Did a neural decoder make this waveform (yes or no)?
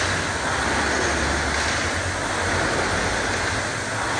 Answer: no